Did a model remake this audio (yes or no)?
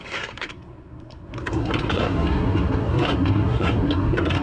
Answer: yes